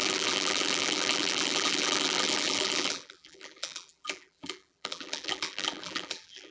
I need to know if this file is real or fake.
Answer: fake